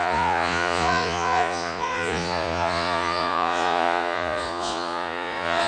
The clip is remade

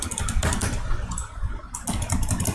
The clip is recorded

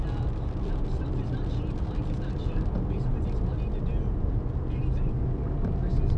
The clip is recorded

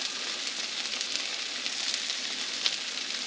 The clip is recorded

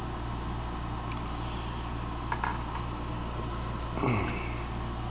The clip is recorded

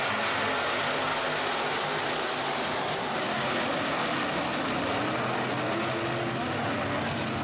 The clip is recorded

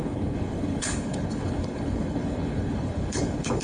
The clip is remade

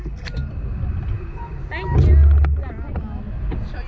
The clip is recorded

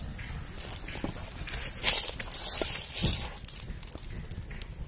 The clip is recorded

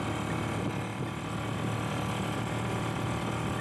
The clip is recorded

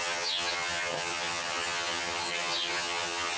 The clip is remade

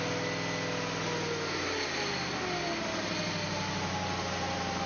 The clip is recorded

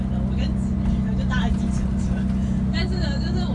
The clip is recorded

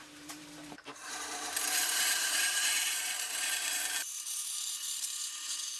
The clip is remade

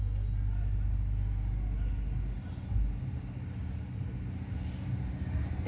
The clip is recorded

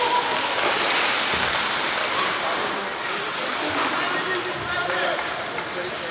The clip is recorded